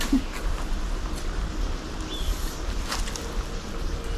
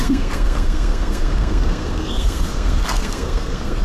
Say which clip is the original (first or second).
first